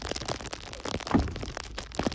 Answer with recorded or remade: recorded